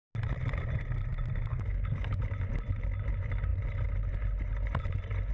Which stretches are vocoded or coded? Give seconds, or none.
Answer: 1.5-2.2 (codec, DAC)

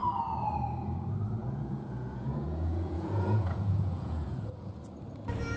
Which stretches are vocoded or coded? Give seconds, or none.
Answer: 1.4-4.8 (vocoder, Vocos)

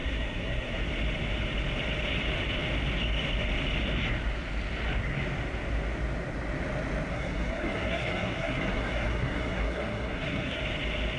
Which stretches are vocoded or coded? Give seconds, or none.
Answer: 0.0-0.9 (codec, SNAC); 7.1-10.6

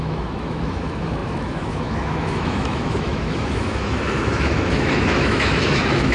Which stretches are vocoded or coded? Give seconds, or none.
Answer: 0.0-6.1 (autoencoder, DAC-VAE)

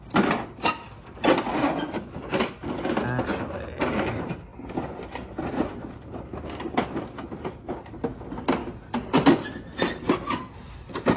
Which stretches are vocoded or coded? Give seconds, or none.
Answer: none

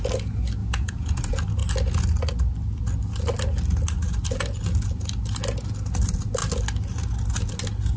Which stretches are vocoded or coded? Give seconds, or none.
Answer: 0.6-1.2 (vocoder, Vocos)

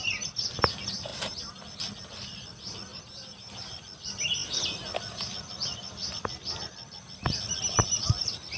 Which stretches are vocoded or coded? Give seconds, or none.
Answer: 1.1-1.6 (vocoder, BigVGAN v2); 2.9-3.7

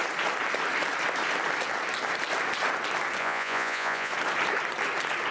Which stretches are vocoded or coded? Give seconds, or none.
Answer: 3.2-4.1 (vocoder, Vocos)